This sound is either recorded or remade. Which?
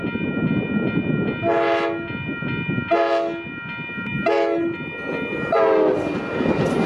recorded